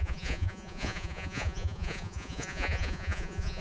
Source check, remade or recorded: remade